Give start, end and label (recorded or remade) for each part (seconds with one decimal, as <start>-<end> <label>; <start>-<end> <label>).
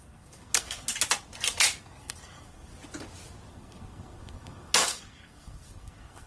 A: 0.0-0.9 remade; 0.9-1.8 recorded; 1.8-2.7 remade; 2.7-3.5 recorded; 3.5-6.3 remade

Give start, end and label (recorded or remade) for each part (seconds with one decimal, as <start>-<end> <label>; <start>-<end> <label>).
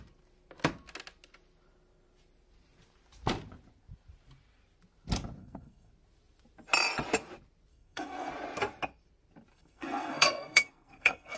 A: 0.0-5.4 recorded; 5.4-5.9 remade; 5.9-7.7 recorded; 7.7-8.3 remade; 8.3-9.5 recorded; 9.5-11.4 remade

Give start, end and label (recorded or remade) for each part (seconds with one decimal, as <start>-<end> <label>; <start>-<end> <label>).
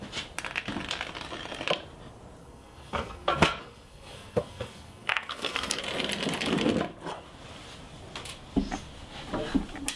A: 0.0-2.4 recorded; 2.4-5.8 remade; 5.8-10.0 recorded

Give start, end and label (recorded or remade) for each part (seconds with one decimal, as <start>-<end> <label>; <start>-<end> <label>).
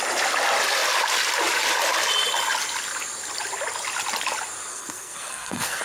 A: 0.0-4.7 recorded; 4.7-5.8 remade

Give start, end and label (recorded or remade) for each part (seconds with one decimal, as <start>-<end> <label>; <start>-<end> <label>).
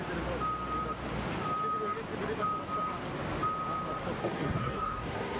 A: 0.0-4.2 recorded; 4.2-5.4 remade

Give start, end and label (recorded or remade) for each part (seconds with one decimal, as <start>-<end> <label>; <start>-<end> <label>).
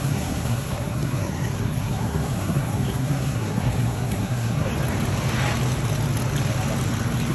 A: 0.0-4.7 remade; 4.7-7.3 recorded